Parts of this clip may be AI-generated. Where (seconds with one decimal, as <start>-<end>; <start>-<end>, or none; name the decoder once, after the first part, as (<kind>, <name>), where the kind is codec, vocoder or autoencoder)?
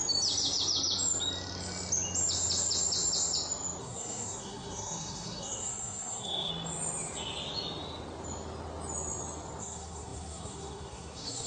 3.8-6.5 (codec, SNAC); 9.6-11.5